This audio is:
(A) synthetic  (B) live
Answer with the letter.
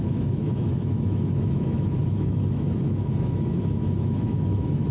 A